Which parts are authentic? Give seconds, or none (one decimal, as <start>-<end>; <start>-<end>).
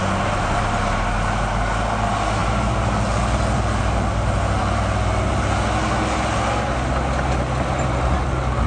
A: 0.0-8.7